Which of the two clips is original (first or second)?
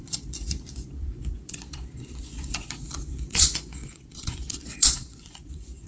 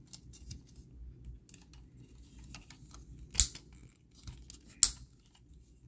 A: second